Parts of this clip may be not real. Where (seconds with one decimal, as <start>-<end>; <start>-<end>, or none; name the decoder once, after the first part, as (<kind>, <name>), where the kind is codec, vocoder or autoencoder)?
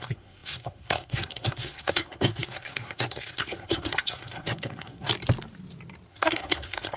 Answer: 0.0-5.1 (codec, SNAC); 6.1-7.0